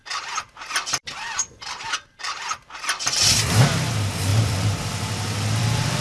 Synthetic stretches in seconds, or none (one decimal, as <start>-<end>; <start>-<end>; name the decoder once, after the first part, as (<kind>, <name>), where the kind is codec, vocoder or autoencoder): 0.0-3.6 (vocoder, BigVGAN v2); 4.3-6.0